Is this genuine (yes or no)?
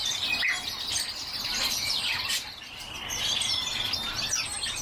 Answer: yes